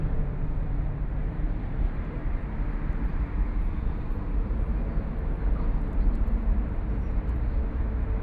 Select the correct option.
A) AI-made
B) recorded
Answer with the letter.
A